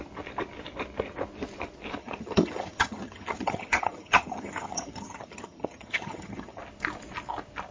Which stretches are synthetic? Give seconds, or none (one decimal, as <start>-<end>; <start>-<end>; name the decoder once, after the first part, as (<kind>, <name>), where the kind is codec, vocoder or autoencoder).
2.0-6.6 (vocoder, HiFi-GAN)

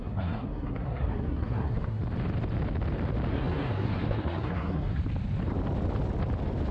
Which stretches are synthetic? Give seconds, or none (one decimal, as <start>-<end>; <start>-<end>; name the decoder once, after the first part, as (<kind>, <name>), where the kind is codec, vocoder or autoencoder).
0.0-2.0 (codec, SNAC); 3.3-5.0

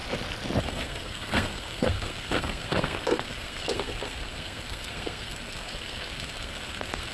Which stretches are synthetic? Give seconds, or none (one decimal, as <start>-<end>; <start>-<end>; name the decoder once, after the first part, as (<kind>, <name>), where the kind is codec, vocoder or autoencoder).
0.6-7.1 (codec, SNAC)

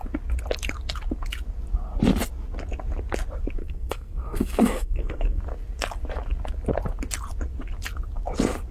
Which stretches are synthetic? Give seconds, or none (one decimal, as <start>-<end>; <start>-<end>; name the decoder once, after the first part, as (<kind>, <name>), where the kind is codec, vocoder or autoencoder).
3.6-5.4 (codec, SNAC)

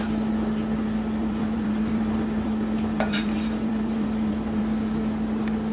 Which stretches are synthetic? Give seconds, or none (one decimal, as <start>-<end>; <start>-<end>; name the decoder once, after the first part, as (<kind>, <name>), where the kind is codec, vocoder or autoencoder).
1.2-4.6 (vocoder, BigVGAN v2)